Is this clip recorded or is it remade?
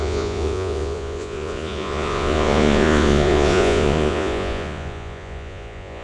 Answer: remade